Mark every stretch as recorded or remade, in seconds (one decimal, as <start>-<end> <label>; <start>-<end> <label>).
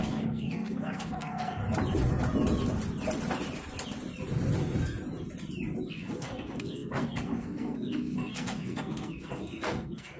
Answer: 0.0-1.6 remade; 1.6-5.9 recorded; 5.9-10.2 remade